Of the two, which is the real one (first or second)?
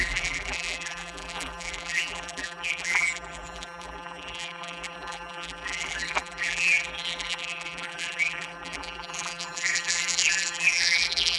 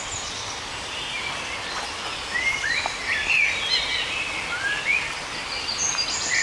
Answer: second